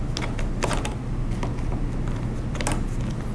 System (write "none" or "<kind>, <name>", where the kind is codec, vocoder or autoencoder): none